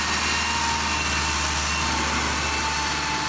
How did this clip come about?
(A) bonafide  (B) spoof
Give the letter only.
A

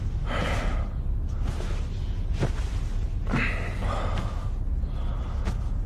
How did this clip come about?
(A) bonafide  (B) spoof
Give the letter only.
A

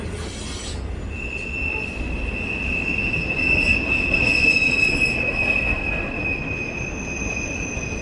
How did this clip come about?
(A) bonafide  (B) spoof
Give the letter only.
A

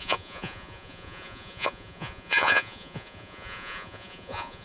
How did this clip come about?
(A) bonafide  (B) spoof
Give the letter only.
B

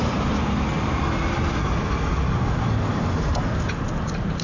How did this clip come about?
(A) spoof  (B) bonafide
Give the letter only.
B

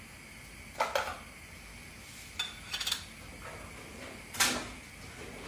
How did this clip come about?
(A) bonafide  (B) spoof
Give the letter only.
A